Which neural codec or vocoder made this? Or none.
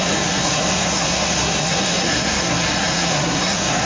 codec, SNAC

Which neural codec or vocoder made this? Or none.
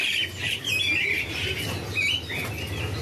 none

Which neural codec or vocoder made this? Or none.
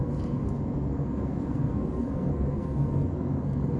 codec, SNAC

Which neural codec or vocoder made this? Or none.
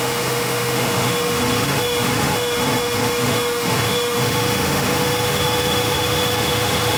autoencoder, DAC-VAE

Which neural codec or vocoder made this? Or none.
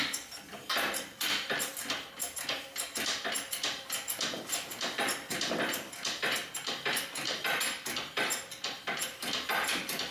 vocoder, BigVGAN v2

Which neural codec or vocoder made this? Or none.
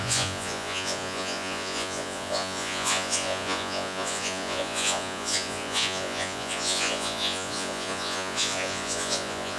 vocoder, Vocos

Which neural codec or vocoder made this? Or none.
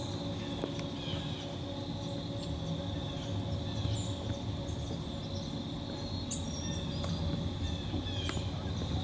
none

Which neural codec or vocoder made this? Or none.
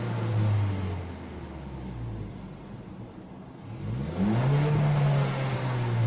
none